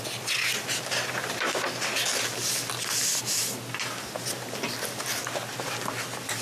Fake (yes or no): no